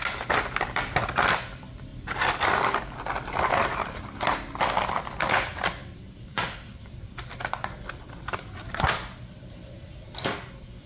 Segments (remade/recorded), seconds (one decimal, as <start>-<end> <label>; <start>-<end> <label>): 0.0-1.9 recorded; 1.9-2.7 remade; 2.7-5.8 recorded; 5.8-7.3 remade; 7.3-10.9 recorded